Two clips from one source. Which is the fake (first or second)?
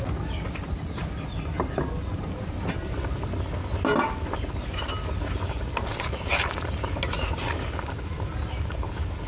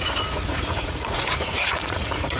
second